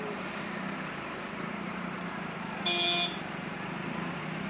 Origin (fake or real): real